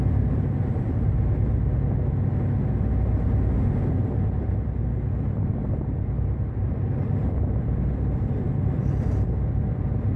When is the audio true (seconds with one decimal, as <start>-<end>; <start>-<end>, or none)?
1.1-4.4